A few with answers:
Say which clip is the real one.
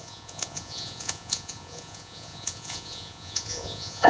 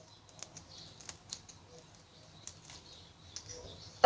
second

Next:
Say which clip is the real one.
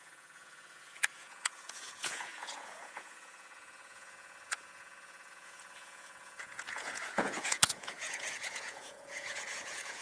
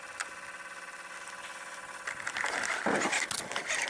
second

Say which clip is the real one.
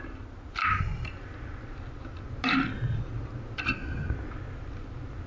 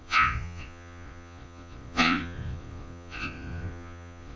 first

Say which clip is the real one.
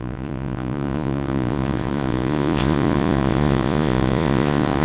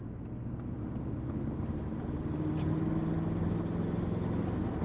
second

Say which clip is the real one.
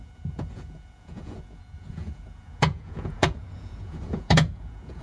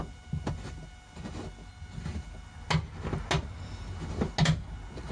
second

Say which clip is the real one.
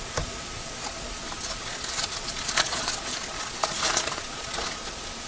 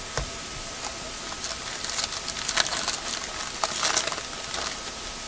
second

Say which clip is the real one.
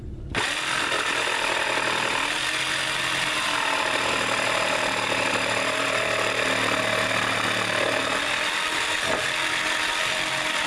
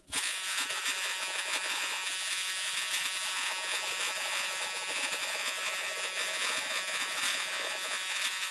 first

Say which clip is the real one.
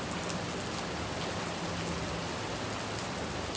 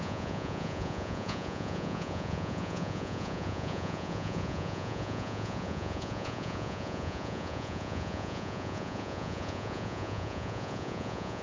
first